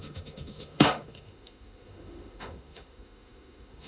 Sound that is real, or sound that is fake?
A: fake